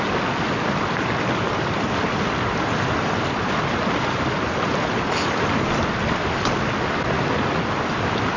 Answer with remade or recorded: recorded